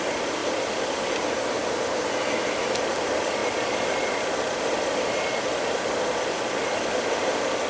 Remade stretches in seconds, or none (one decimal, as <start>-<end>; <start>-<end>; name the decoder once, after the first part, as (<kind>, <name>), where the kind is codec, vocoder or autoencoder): 0.4-1.2 (vocoder, BigVGAN v2); 3.4-5.4